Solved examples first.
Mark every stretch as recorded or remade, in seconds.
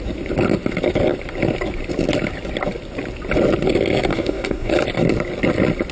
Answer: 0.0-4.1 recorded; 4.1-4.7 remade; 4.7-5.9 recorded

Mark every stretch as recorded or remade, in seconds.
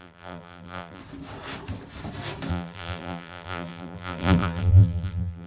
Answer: 0.0-1.0 remade; 1.0-2.5 recorded; 2.5-5.5 remade